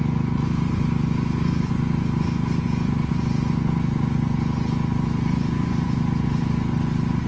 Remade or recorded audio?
remade